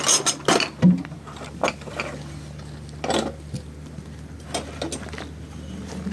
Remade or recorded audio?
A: recorded